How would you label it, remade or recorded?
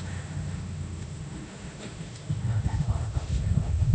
remade